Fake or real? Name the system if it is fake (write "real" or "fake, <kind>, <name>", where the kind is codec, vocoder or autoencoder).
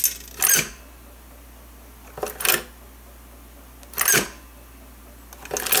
real